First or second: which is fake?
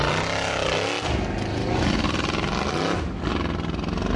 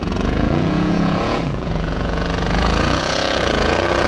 second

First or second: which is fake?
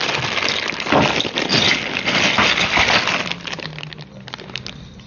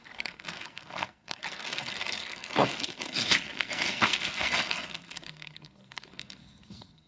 second